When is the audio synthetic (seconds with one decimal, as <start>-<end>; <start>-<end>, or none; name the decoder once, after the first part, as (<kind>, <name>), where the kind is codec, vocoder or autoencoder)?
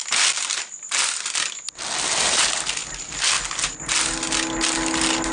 none